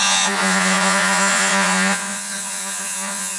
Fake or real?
fake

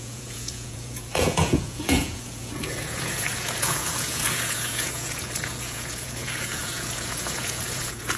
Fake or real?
fake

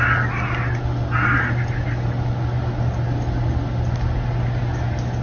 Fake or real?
real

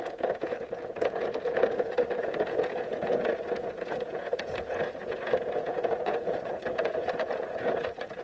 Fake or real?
fake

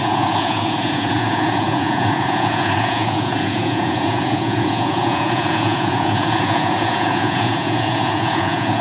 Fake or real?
fake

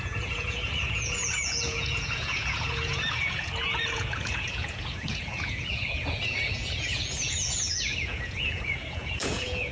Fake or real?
fake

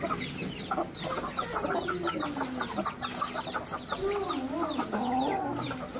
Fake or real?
real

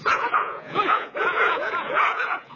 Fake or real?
fake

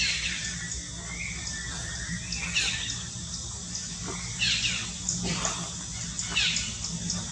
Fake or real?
real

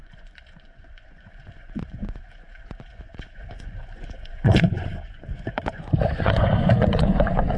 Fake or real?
fake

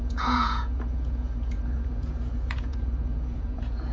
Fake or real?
fake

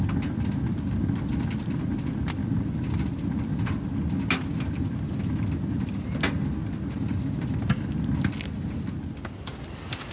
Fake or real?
real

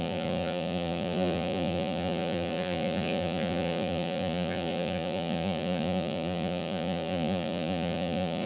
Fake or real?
fake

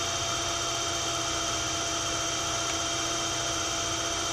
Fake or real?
real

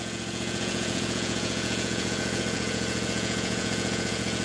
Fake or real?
fake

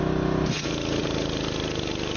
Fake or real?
real